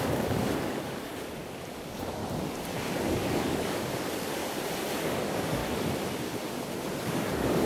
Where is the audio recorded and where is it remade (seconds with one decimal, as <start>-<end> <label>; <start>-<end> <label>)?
0.0-1.1 remade; 1.1-1.7 recorded; 1.7-2.2 remade; 2.2-2.8 recorded; 2.8-4.4 remade; 4.4-5.0 recorded; 5.0-5.6 remade; 5.6-7.0 recorded; 7.0-7.7 remade